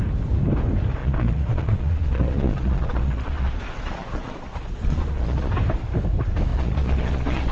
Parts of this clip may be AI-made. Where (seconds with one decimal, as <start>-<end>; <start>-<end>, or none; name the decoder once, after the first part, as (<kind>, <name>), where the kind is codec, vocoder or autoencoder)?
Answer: 1.0-5.5 (vocoder, Vocos); 6.5-7.5